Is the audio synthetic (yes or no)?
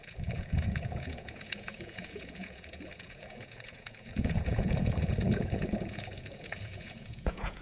yes